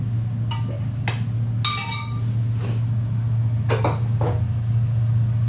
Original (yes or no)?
yes